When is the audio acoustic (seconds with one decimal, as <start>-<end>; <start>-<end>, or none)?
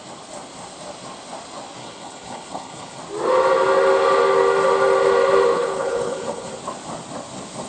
0.0-1.8; 3.0-5.5; 6.5-7.7